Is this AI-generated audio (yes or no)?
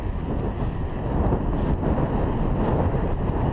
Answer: no